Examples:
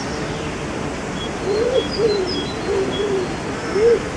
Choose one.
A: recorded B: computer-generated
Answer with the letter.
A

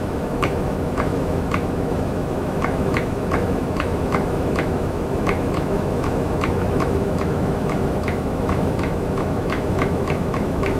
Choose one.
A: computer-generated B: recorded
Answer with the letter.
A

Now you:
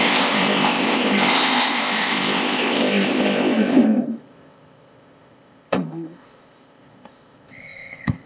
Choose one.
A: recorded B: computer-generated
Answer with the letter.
B